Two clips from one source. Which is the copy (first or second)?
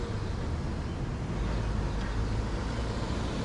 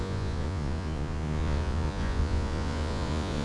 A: second